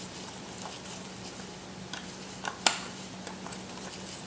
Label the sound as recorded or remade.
recorded